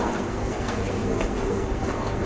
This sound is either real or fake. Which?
fake